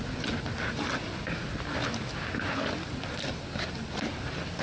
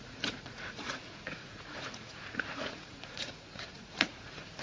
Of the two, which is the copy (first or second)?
second